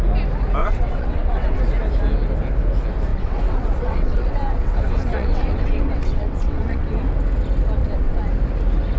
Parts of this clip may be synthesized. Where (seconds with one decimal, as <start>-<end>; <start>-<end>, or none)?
0.6-1.6; 3.1-6.9; 7.8-8.3